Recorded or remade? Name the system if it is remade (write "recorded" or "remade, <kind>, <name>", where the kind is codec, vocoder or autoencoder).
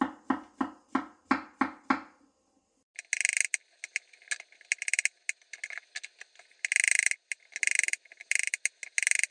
recorded